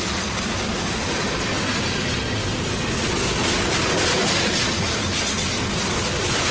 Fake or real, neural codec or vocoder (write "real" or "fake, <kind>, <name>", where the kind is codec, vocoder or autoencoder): real